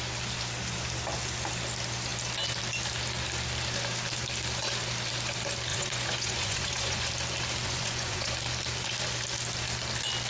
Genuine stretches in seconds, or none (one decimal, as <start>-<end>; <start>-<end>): 0.0-5.7; 7.1-7.6; 8.3-10.3